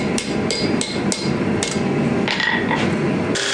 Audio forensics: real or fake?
real